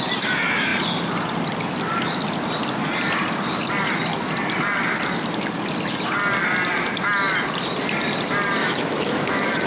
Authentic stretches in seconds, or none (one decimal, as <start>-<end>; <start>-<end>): 0.0-8.6